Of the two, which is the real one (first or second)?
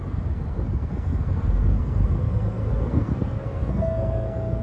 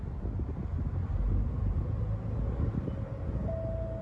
second